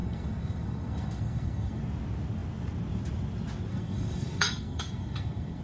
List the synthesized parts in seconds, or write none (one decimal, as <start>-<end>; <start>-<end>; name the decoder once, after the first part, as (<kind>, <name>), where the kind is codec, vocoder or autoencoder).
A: 0.0-1.8 (codec, SNAC); 3.7-5.6